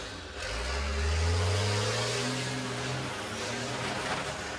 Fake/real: real